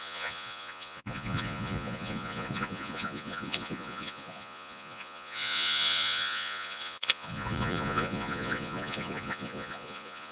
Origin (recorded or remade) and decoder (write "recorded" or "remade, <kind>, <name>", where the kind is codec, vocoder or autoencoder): remade, vocoder, Vocos